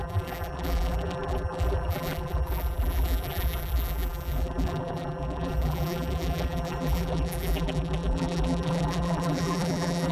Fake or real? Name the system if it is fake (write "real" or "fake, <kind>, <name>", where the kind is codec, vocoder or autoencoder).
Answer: fake, vocoder, BigVGAN v2